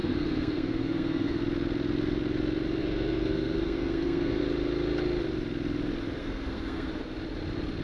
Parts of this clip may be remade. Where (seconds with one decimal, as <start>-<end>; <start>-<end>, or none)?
0.0-1.4; 2.8-4.4; 6.2-6.9

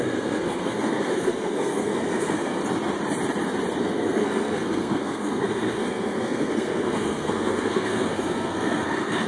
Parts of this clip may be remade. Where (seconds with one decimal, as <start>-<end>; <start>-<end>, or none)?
0.0-2.6; 3.8-9.3

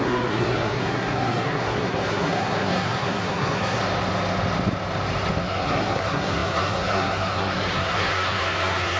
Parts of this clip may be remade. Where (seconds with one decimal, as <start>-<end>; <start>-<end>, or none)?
0.0-3.8; 5.4-9.0

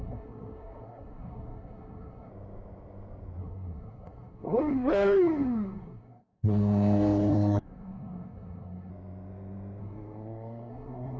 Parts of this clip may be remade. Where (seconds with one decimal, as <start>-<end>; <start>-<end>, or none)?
0.0-2.3; 3.4-8.9; 9.8-11.2

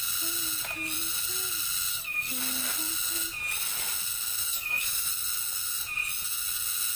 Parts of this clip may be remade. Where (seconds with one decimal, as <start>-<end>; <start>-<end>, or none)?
1.9-2.4; 4.4-5.1

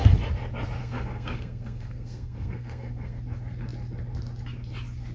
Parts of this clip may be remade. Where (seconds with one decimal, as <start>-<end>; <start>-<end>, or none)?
0.8-3.2

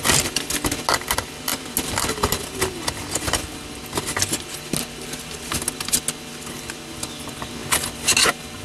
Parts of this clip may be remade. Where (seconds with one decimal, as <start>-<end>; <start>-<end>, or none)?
none

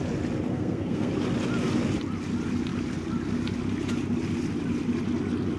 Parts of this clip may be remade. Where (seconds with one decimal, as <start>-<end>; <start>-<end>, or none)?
0.5-1.1